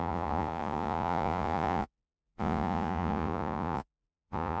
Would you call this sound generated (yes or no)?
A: yes